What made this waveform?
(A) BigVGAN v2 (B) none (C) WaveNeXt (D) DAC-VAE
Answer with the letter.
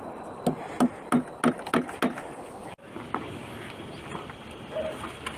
B